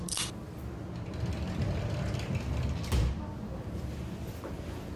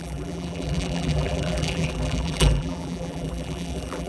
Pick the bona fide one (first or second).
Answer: first